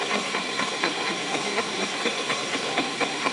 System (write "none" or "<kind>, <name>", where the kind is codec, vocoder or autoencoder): codec, SNAC